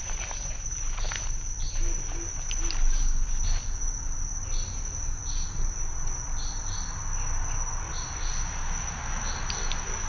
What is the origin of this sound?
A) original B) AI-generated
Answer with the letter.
A